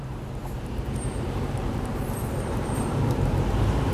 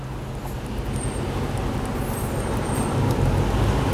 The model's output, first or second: first